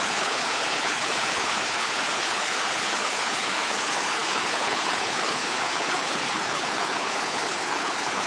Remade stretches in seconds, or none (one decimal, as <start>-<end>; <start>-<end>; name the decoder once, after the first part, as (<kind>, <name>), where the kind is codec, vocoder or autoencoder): 0.0-8.3 (codec, HILCodec)